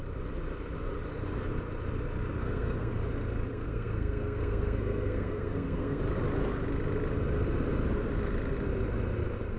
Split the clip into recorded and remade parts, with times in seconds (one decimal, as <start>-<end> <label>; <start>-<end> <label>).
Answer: 0.0-2.4 recorded; 2.4-2.9 remade; 2.9-3.5 recorded; 3.5-6.0 remade; 6.0-9.6 recorded